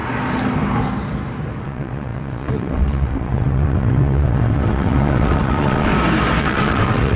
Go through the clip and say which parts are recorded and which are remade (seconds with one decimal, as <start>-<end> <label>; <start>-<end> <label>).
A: 0.0-1.6 recorded; 1.6-5.9 remade; 5.9-6.4 recorded; 6.4-7.2 remade